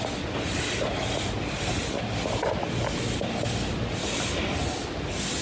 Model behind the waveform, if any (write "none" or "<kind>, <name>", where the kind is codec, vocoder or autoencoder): none